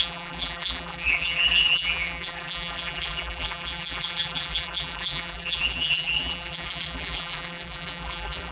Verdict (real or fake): fake